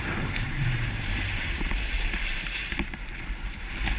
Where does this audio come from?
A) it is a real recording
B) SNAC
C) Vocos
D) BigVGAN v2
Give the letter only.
D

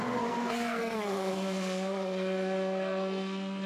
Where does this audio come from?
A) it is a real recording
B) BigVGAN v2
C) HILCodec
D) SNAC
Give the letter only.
D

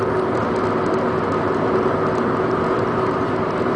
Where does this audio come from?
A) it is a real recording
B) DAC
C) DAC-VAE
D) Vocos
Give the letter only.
A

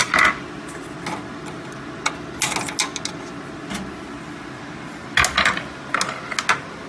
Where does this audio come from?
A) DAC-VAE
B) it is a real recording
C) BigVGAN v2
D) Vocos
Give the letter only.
B